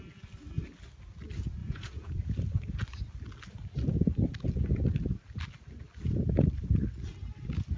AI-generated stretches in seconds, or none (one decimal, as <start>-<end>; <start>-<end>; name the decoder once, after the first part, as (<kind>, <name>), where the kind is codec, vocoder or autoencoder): 1.6-2.3 (vocoder, Vocos)